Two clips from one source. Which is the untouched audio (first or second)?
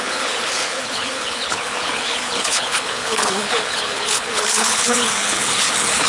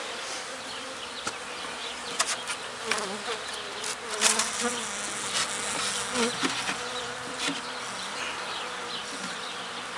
second